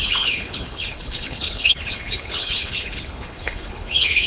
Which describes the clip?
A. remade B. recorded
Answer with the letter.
A